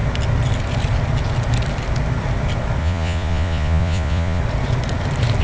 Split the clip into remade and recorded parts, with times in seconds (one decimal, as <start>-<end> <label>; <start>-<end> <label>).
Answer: 0.0-2.8 recorded; 2.8-4.4 remade; 4.4-5.4 recorded